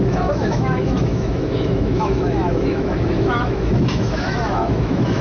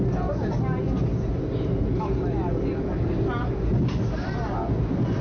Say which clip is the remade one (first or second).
first